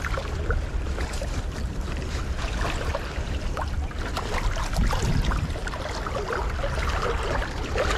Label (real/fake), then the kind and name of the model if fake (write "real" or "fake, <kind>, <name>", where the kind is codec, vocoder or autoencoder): real